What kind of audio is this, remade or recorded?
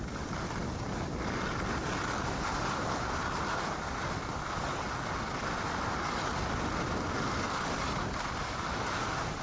recorded